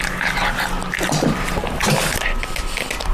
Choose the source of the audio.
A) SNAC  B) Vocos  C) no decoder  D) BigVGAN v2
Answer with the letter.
C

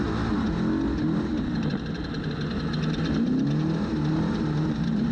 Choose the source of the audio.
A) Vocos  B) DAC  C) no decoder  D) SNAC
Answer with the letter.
C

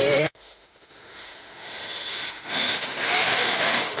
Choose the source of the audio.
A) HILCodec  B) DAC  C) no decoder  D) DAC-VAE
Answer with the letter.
D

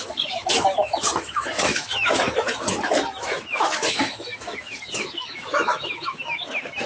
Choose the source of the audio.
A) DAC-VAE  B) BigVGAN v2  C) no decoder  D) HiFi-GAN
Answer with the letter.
A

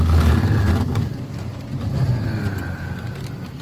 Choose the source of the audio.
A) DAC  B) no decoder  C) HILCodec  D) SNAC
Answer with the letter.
B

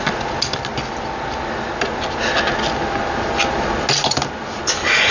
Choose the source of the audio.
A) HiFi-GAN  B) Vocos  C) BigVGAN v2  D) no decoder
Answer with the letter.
D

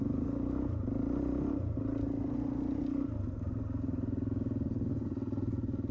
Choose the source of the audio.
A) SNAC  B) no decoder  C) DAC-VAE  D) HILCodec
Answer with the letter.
B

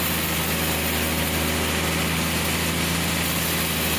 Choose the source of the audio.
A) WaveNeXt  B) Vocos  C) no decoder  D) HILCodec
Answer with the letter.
C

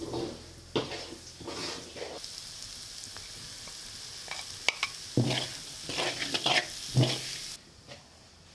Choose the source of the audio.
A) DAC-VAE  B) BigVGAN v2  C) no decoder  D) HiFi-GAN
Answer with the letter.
C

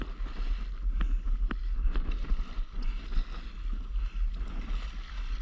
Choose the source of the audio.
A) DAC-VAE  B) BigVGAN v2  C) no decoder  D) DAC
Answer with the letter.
C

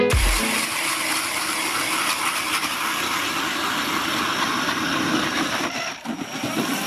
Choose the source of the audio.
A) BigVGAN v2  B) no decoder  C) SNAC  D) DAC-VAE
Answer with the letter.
A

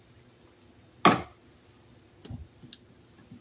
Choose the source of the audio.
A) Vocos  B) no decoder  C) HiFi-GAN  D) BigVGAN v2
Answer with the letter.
B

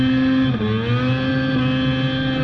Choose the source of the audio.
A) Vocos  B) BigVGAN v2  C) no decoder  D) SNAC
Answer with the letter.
C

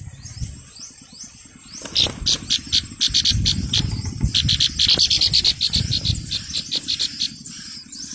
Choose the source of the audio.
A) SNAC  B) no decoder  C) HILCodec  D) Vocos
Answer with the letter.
B